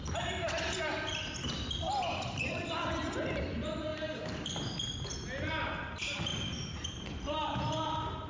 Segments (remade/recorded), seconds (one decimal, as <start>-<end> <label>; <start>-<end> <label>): 0.0-6.3 recorded; 6.3-7.3 remade; 7.3-8.3 recorded